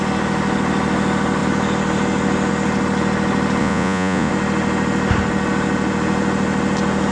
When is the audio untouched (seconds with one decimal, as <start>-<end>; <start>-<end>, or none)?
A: 0.0-3.6; 4.3-7.1